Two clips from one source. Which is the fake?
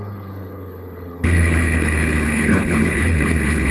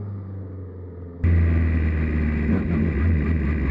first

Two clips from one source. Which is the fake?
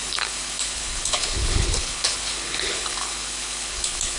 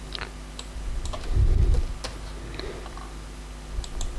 first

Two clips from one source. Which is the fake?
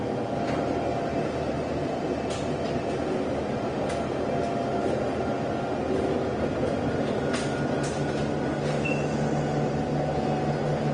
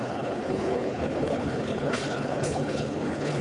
second